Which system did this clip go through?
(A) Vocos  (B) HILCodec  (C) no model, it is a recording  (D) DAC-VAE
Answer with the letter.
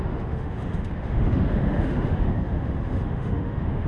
D